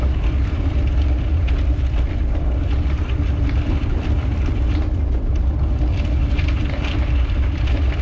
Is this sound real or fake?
fake